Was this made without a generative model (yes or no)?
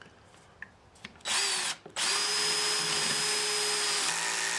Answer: yes